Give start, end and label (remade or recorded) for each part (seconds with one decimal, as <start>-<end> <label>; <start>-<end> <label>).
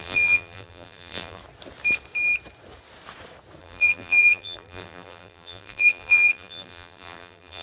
0.0-1.4 remade; 1.4-3.6 recorded; 3.6-7.6 remade